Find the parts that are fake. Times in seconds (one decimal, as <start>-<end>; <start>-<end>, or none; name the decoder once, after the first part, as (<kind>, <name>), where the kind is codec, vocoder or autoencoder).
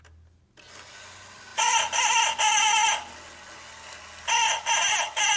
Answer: none